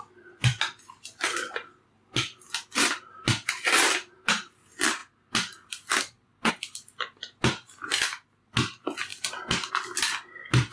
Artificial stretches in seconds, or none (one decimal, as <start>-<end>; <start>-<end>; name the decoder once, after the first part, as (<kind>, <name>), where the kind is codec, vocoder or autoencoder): none